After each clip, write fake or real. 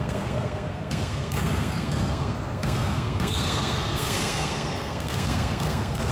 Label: fake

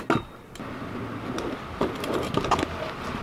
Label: real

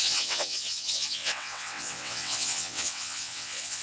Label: fake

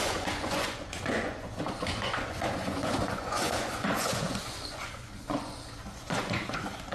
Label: fake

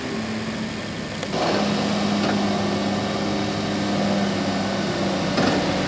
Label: real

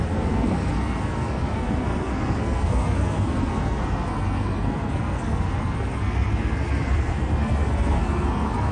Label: fake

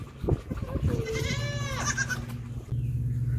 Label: real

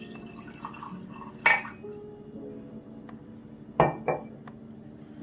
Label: real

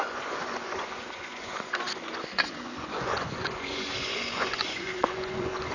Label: fake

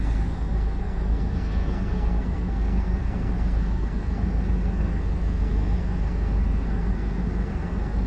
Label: fake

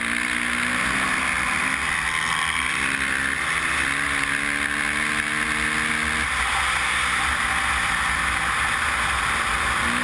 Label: real